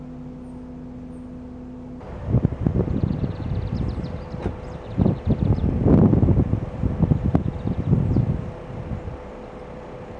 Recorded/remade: recorded